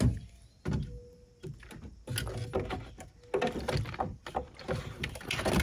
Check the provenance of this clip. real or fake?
real